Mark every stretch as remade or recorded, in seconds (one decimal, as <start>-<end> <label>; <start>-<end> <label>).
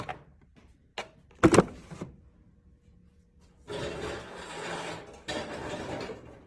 0.0-6.5 recorded